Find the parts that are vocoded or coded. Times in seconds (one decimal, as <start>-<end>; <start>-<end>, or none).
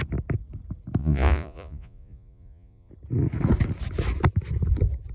1.0-2.9